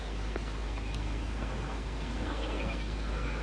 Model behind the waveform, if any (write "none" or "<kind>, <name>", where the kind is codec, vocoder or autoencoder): codec, SNAC